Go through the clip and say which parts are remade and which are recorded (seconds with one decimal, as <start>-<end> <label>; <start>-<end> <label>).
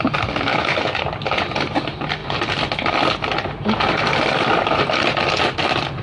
0.0-0.5 recorded; 0.5-1.0 remade; 1.0-6.0 recorded